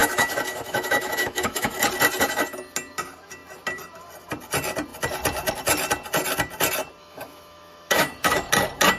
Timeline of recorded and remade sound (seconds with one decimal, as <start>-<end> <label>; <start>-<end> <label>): 0.0-1.7 remade; 1.7-7.0 recorded; 7.0-8.5 remade; 8.5-9.0 recorded